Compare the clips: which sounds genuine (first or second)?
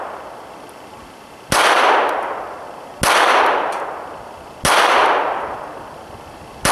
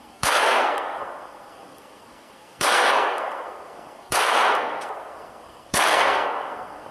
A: first